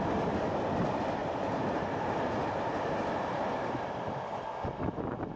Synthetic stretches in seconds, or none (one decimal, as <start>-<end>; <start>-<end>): 1.2-4.1

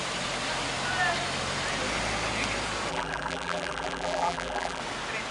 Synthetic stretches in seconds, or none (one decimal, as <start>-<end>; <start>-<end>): 2.9-4.8

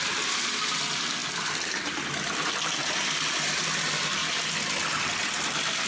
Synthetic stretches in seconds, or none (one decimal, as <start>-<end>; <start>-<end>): 1.2-3.4

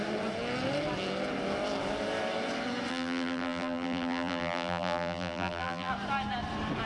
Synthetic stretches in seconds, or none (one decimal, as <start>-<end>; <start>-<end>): 2.9-5.9

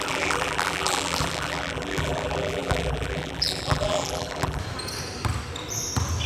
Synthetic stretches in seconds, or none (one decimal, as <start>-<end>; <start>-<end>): 0.0-4.6

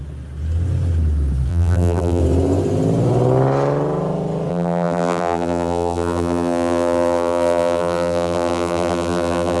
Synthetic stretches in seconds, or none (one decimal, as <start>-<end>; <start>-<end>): 1.5-2.2; 4.5-9.6

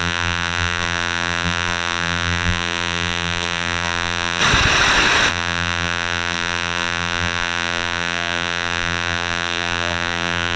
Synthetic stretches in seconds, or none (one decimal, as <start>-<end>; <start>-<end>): 0.0-4.4; 5.3-10.6

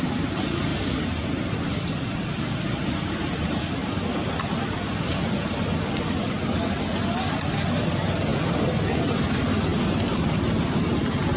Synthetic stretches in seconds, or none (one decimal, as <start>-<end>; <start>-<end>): 0.0-0.7; 1.3-9.7; 10.2-11.4